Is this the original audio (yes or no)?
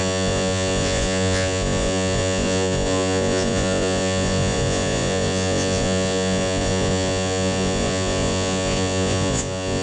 no